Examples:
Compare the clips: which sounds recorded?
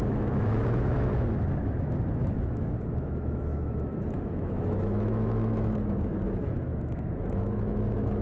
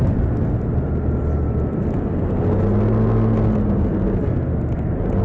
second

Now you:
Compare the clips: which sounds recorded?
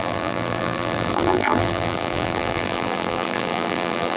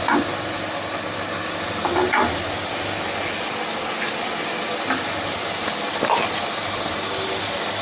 second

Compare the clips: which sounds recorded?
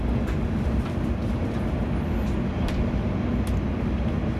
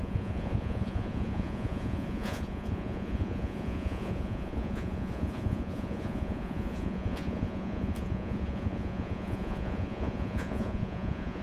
first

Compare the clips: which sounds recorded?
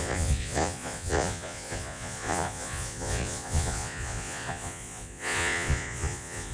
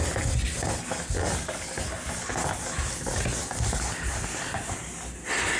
second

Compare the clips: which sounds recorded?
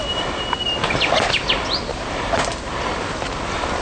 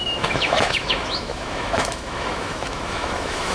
first